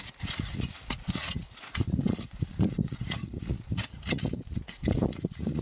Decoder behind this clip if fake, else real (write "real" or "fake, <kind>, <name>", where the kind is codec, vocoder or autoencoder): fake, vocoder, Vocos